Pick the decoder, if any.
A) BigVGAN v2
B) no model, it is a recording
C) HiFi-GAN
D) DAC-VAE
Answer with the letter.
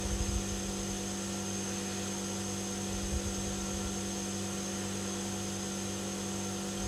B